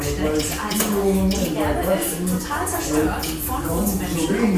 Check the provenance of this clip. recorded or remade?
recorded